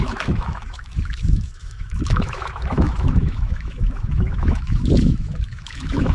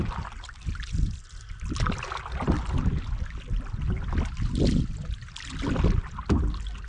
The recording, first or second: second